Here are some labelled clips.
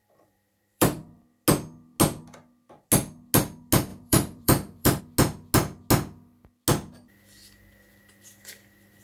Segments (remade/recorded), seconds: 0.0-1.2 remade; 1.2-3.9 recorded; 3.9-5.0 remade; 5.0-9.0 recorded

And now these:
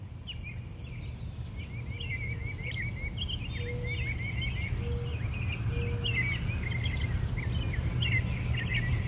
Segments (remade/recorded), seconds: 0.0-9.1 recorded

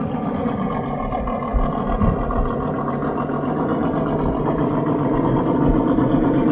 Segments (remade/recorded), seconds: 0.0-6.5 recorded